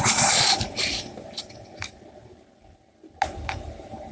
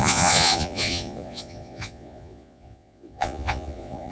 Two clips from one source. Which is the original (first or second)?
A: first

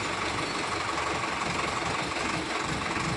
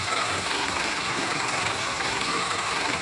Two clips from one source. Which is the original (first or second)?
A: first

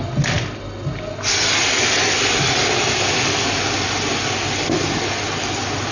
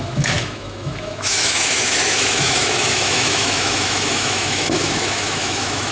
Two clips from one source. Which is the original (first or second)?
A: first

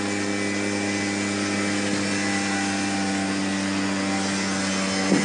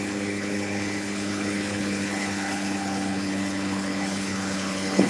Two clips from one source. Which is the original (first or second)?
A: first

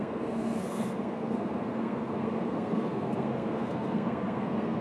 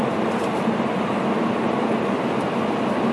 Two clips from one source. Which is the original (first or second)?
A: second